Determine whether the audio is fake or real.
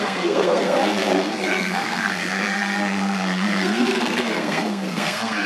fake